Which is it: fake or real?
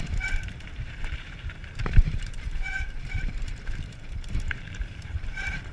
fake